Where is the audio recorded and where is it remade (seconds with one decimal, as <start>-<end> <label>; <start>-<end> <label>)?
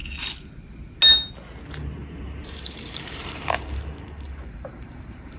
0.0-2.0 recorded; 2.0-5.4 remade